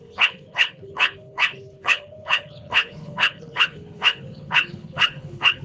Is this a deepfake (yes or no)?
yes